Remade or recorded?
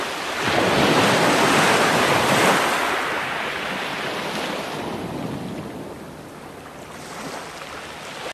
recorded